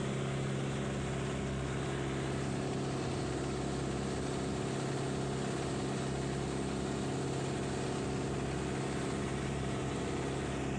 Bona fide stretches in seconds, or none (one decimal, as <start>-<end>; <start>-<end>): 0.0-9.3; 9.9-10.8